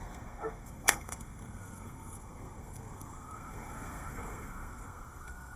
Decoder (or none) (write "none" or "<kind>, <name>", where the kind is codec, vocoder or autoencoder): codec, SNAC